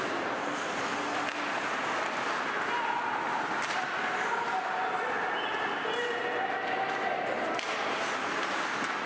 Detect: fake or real real